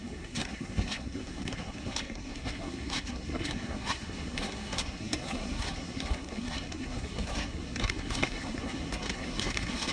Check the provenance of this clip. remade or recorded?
remade